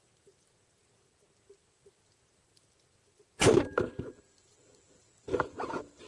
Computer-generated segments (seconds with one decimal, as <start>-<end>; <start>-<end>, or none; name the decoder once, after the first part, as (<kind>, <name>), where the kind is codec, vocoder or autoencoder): none